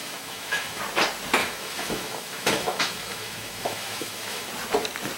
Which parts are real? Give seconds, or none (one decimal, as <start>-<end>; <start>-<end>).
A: 0.8-1.4; 4.5-5.2